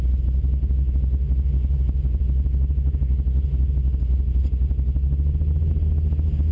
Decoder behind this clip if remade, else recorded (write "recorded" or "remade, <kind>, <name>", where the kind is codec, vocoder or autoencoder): recorded